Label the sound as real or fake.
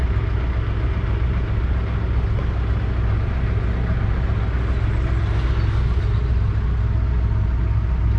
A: real